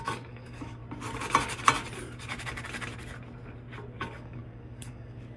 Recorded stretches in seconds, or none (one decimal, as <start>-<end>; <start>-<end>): 0.8-4.0